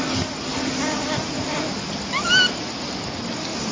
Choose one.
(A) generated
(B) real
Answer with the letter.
B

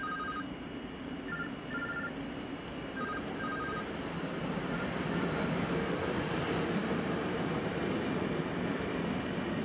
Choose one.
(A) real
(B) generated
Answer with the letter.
A